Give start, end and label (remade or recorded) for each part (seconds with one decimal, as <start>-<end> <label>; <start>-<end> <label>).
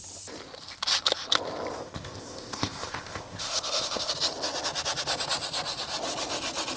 0.0-1.8 recorded; 1.8-4.1 remade; 4.1-6.8 recorded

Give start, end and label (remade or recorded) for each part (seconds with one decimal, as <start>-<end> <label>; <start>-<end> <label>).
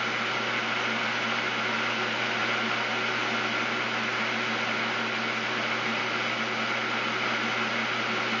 0.0-8.4 recorded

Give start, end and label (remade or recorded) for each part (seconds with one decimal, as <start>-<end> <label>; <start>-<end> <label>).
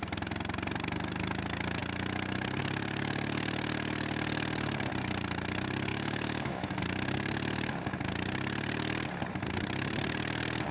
0.0-5.9 recorded; 5.9-6.8 remade; 6.8-10.7 recorded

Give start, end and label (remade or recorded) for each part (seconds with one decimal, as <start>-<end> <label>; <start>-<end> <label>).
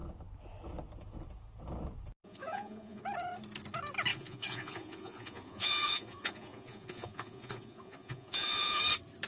0.0-2.2 recorded; 2.2-3.0 remade; 3.0-4.1 recorded; 4.1-8.8 remade; 8.8-9.3 recorded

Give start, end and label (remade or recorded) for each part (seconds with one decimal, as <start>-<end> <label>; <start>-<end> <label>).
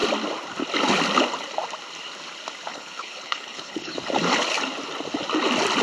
0.0-2.7 recorded; 2.7-3.9 remade; 3.9-5.8 recorded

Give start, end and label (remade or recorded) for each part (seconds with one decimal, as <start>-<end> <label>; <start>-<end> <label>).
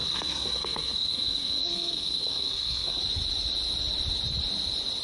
0.0-3.0 remade; 3.0-5.0 recorded